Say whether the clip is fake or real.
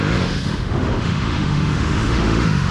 fake